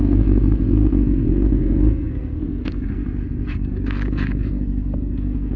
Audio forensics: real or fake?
fake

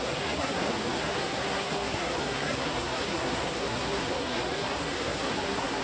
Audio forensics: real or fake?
fake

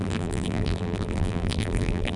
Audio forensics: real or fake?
fake